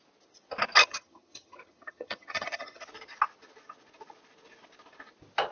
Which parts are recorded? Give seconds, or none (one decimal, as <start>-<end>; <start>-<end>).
0.0-0.8; 2.8-5.5